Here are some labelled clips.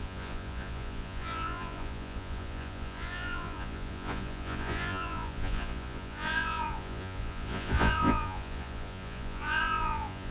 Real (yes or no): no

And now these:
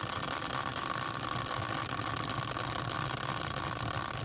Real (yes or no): no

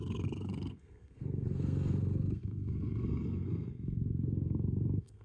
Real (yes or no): no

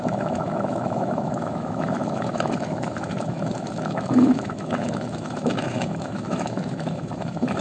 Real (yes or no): no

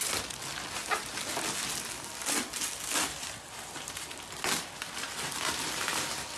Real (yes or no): yes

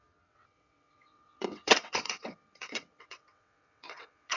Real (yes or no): no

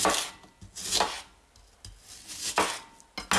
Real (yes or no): yes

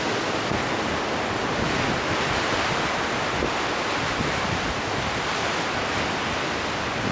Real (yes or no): yes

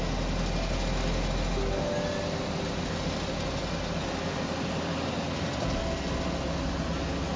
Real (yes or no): yes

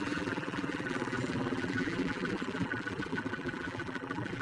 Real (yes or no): no